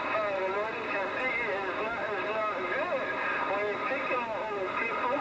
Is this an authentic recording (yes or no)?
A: yes